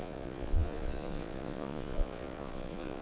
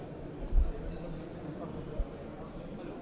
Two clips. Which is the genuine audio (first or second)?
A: second